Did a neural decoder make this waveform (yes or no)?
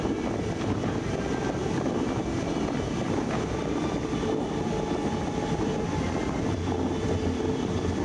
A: no